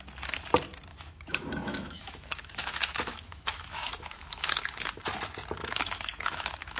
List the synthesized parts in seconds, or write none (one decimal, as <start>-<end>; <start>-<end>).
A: 0.9-5.0; 5.6-6.8